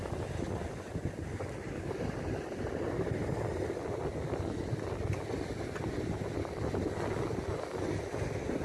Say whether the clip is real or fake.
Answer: real